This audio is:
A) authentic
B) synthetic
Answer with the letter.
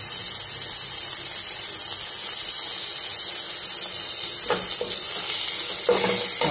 A